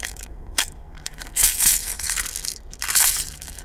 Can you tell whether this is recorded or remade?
remade